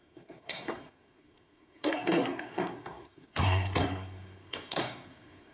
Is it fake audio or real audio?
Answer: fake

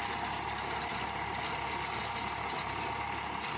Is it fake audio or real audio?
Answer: real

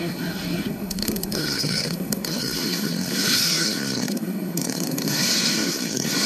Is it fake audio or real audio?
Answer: fake